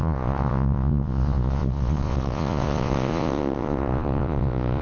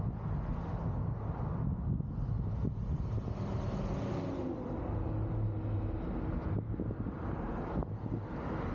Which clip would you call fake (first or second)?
first